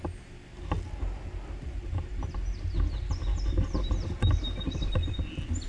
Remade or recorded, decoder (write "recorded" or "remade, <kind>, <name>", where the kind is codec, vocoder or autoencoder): recorded